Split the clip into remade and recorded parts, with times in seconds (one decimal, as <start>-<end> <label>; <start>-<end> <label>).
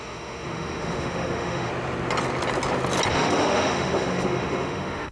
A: 0.0-1.7 remade; 1.7-3.1 recorded; 3.1-5.1 remade